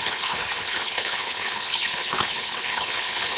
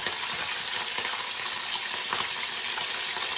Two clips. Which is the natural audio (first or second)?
second